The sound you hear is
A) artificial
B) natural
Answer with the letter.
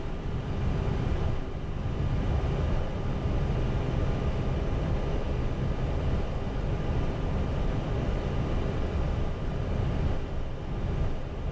B